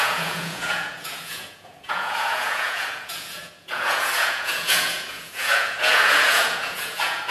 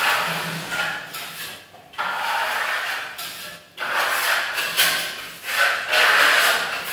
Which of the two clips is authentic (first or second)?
second